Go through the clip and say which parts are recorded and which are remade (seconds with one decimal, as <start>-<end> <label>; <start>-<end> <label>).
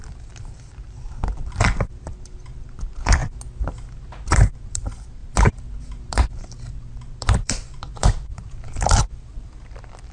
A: 0.0-3.2 remade; 3.2-4.3 recorded; 4.3-5.2 remade; 5.2-6.1 recorded; 6.1-10.1 remade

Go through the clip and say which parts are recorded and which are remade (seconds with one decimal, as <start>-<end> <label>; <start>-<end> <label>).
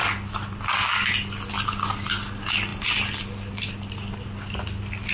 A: 0.0-5.1 recorded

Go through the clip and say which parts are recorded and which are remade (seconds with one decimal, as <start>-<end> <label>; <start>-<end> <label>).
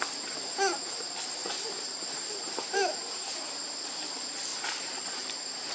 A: 0.0-1.4 recorded; 1.4-3.3 remade; 3.3-4.5 recorded; 4.5-5.7 remade